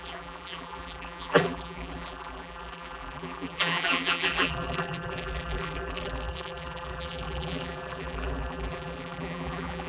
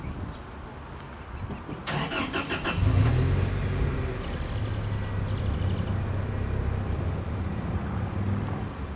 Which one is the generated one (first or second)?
first